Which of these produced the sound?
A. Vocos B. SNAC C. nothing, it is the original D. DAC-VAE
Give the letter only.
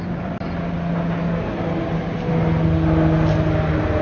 C